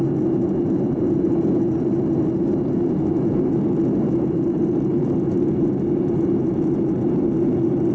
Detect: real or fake real